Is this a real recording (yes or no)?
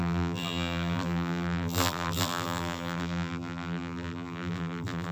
no